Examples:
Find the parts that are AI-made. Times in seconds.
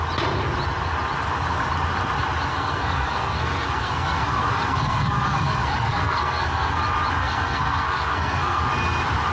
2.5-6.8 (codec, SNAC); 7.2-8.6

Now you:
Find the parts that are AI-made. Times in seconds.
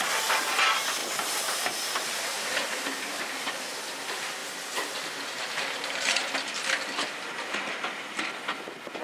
1.0-3.2 (vocoder, BigVGAN v2); 4.4-6.2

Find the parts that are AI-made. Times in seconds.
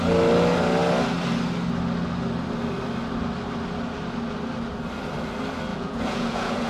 5.7-6.7 (vocoder, Vocos)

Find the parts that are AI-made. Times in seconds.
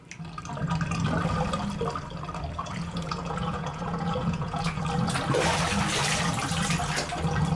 2.7-4.8 (vocoder, Vocos)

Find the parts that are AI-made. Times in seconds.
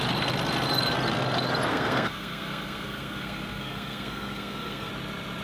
1.7-4.9 (codec, SNAC)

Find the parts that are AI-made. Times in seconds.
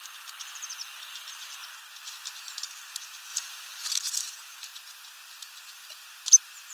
0.0-1.6 (vocoder, BigVGAN v2); 2.6-4.7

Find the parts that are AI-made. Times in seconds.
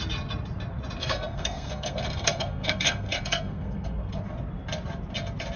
1.0-4.2 (codec, SNAC)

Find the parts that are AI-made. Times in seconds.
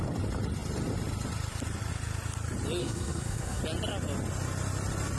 2.8-3.6 (codec, SNAC)